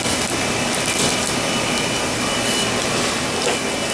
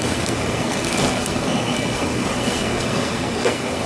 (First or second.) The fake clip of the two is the second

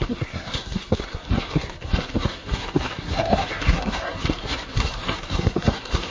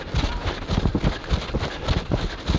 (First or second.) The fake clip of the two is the first